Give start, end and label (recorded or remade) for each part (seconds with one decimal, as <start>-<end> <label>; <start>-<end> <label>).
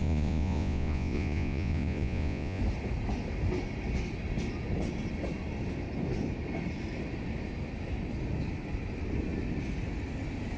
0.0-2.6 remade; 2.6-10.6 recorded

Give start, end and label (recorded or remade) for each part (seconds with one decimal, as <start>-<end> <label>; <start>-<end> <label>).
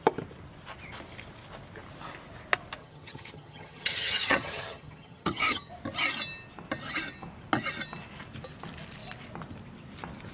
0.0-2.8 recorded; 2.8-5.7 remade; 5.7-10.3 recorded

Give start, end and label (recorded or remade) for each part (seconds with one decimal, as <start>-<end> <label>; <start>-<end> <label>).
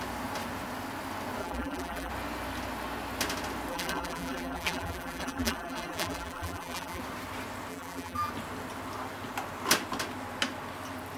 0.0-1.4 recorded; 1.4-2.1 remade; 2.1-3.7 recorded; 3.7-7.0 remade; 7.0-7.7 recorded; 7.7-8.3 remade; 8.3-11.2 recorded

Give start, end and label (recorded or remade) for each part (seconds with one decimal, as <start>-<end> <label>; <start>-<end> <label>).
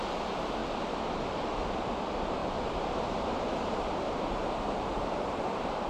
0.0-2.4 recorded; 2.4-5.9 remade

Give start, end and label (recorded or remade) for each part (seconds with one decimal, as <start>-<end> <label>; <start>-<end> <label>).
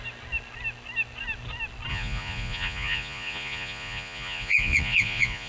0.0-1.9 recorded; 1.9-5.5 remade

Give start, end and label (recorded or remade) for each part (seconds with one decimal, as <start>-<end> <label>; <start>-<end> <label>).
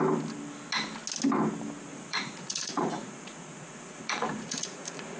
0.0-1.9 recorded; 1.9-5.2 remade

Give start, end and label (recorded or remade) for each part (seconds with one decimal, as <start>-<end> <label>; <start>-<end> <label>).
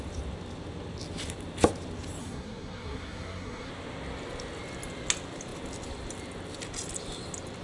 0.0-2.2 recorded; 2.2-3.7 remade; 3.7-7.6 recorded